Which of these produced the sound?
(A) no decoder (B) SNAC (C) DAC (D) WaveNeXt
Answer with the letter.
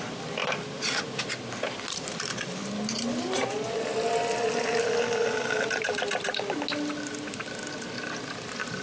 A